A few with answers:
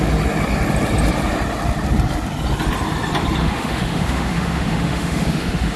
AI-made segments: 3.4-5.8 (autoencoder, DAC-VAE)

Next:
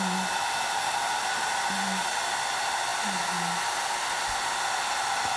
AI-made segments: none

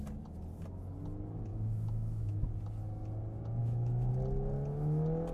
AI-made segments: 1.5-2.5 (autoencoder, DAC-VAE); 3.6-4.1

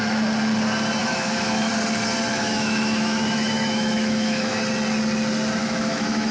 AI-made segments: 1.0-1.7 (autoencoder, DAC-VAE); 2.3-4.6; 5.6-6.3

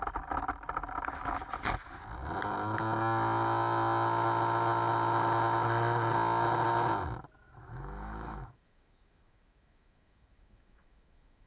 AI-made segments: 7.4-11.5 (autoencoder, DAC-VAE)

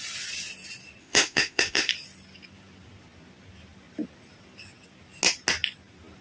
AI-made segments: 1.0-1.9 (autoencoder, DAC-VAE)

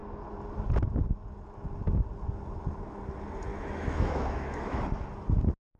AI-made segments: 3.5-4.8 (autoencoder, DAC-VAE)

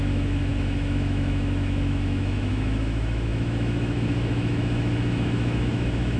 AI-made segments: 0.0-6.2 (autoencoder, DAC-VAE)